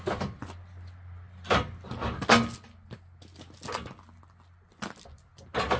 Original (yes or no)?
yes